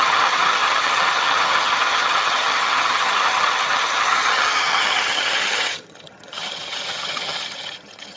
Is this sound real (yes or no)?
no